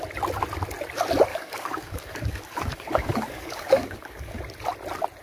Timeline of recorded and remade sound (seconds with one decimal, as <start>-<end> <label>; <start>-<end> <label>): 0.0-1.3 recorded; 1.3-4.4 remade; 4.4-5.2 recorded